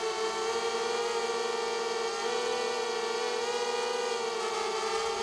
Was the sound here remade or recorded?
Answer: recorded